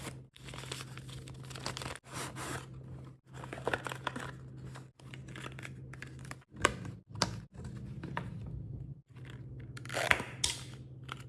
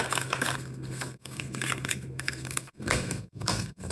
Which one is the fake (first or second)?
second